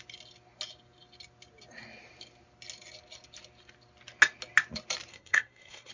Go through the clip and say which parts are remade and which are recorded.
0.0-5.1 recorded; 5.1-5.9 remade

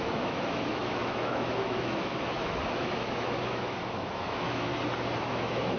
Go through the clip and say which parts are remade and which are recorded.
0.0-4.7 remade; 4.7-5.2 recorded; 5.2-5.8 remade

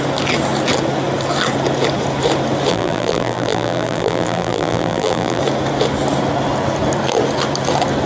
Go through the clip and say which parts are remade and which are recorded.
0.0-2.7 recorded; 2.7-5.4 remade; 5.4-8.1 recorded

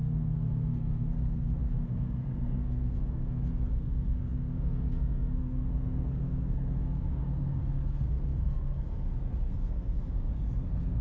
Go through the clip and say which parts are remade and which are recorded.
0.0-11.0 remade

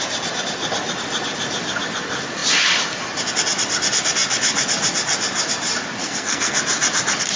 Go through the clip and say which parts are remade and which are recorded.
0.0-6.0 recorded; 6.0-6.6 remade; 6.6-7.4 recorded

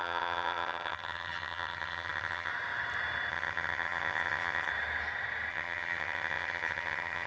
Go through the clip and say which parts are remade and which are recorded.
0.0-2.5 remade; 2.5-3.3 recorded; 3.3-4.7 remade; 4.7-5.5 recorded; 5.5-7.3 remade

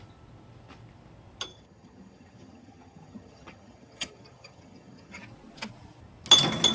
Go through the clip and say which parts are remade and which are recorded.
0.0-1.5 recorded; 1.5-5.2 remade; 5.2-6.7 recorded